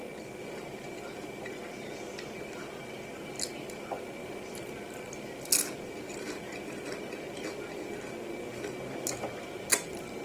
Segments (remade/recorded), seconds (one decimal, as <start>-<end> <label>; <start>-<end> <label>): 0.0-10.2 recorded